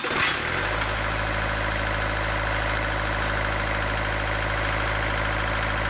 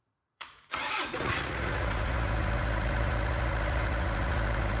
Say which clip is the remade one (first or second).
second